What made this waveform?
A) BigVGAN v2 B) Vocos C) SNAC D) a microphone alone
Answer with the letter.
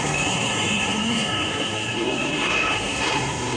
C